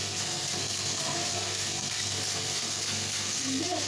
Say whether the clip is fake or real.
fake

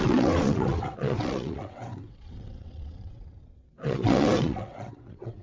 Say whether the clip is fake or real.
fake